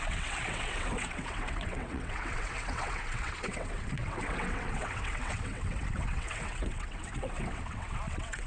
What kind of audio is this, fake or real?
fake